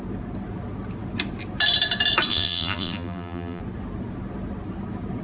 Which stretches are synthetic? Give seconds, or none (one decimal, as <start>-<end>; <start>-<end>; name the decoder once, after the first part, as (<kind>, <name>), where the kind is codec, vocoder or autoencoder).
2.3-3.6 (vocoder, BigVGAN v2)